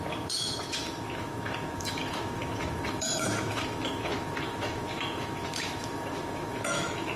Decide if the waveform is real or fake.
fake